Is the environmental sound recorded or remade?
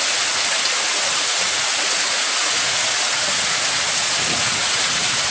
remade